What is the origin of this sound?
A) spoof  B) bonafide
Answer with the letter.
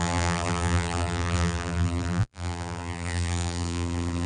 A